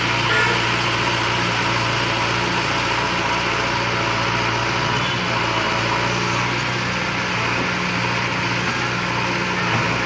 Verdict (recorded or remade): recorded